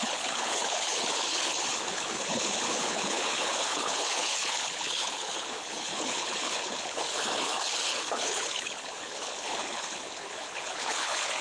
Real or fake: fake